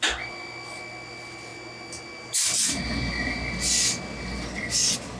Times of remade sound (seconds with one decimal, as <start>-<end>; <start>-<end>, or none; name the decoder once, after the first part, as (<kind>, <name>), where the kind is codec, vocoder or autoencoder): none